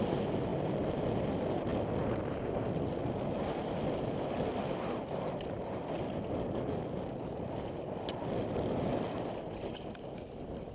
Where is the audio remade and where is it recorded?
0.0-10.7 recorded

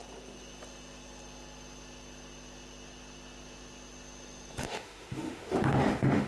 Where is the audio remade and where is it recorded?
0.0-4.6 recorded; 4.6-6.3 remade

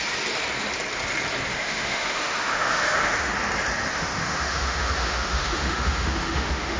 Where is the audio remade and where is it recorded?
0.0-1.5 recorded; 1.5-3.3 remade; 3.3-3.9 recorded; 3.9-6.8 remade

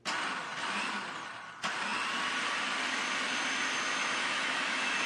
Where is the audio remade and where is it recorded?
0.0-4.0 recorded; 4.0-5.1 remade

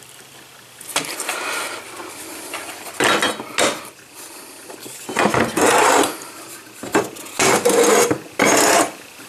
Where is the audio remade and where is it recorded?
0.0-9.3 recorded

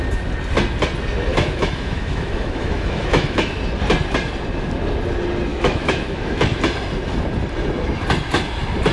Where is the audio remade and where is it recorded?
0.0-1.3 recorded; 1.3-3.6 remade; 3.6-5.5 recorded; 5.5-6.6 remade; 6.6-8.9 recorded